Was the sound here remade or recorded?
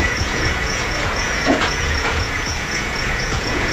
remade